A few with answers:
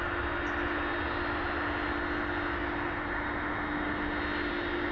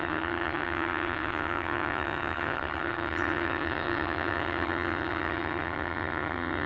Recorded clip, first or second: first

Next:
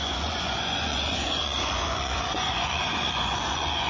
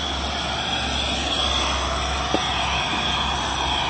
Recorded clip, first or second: second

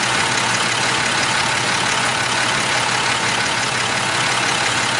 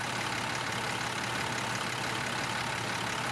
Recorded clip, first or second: second